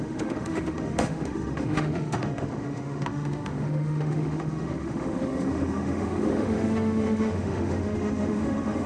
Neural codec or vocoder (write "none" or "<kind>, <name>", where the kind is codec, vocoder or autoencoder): autoencoder, DAC-VAE